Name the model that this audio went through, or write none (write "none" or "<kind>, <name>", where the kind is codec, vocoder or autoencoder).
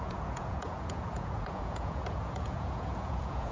vocoder, Vocos